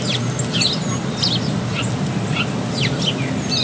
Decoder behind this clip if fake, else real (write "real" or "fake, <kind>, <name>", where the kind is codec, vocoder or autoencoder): real